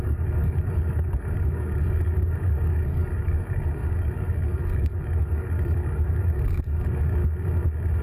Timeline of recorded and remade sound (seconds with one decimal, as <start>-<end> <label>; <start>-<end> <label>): 0.0-7.2 remade; 7.2-8.0 recorded